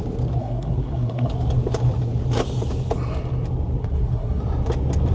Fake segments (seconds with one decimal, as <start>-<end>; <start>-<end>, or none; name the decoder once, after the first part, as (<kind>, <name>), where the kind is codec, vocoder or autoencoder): 0.4-1.3 (codec, SNAC); 3.8-4.4